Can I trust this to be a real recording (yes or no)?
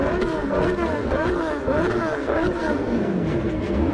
no